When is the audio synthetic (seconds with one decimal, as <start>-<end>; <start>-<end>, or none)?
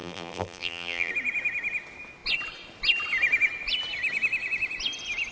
0.0-1.1